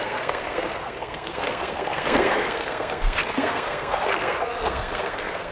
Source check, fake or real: fake